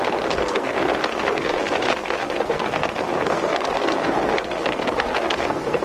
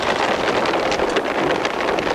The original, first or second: second